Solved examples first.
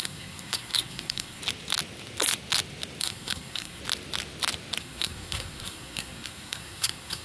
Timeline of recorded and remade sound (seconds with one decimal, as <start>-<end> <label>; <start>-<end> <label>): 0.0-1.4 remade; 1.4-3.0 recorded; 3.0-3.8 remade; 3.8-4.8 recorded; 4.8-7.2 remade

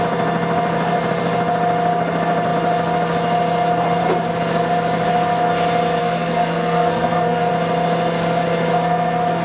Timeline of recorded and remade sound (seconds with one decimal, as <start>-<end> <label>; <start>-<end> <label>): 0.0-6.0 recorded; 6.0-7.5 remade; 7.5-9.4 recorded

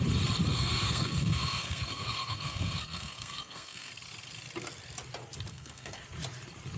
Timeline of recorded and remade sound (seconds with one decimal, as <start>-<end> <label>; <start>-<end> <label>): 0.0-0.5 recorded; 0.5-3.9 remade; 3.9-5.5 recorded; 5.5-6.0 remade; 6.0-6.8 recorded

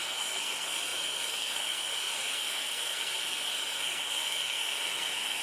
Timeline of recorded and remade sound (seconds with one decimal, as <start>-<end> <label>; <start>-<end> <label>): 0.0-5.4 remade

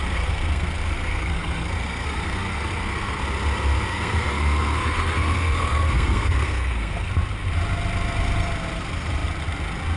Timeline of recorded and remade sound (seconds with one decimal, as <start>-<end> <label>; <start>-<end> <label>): 0.0-3.2 remade; 3.2-3.9 recorded; 3.9-7.1 remade; 7.1-10.0 recorded

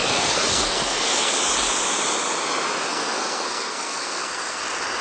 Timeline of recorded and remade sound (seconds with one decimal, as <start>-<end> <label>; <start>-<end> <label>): 0.0-1.4 remade; 1.4-2.9 recorded; 2.9-4.6 remade; 4.6-5.0 recorded

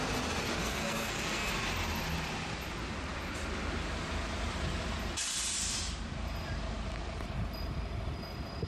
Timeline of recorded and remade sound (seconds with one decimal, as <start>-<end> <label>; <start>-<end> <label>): 0.0-0.6 recorded; 0.6-1.5 remade; 1.5-8.7 recorded